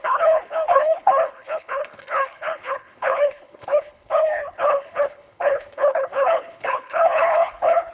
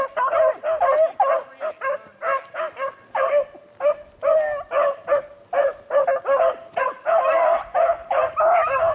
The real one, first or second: second